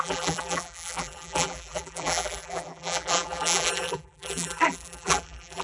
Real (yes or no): no